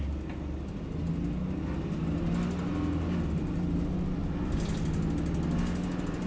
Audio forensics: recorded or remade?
recorded